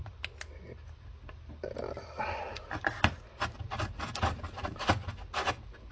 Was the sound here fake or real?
real